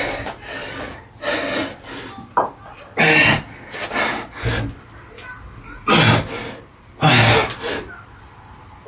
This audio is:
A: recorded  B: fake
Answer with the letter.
A